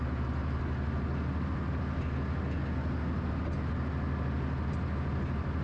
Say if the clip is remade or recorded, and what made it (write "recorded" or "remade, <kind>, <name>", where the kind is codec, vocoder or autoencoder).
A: recorded